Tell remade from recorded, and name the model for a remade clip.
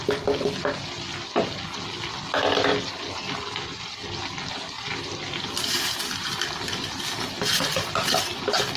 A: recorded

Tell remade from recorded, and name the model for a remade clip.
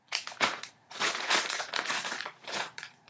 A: remade, vocoder, Vocos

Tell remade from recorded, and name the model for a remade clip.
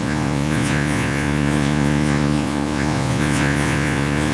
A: remade, vocoder, Vocos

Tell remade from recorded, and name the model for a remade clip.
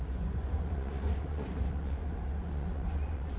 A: remade, vocoder, Vocos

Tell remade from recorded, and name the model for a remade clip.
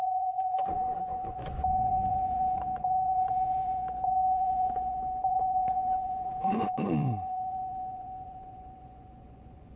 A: remade, vocoder, Vocos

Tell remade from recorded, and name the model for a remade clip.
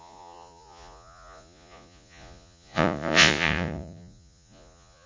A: remade, vocoder, Vocos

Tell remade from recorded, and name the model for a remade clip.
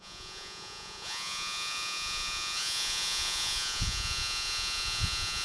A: remade, vocoder, Vocos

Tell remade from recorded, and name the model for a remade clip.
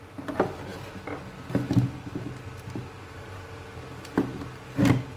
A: recorded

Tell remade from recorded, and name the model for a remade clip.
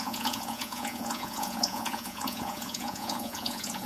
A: remade, vocoder, Vocos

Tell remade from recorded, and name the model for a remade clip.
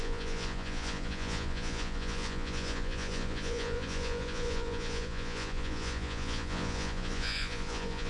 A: remade, vocoder, Vocos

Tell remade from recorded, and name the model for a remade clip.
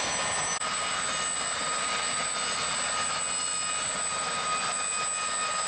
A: recorded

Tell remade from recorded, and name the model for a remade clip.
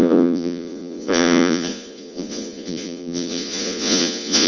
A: remade, vocoder, Vocos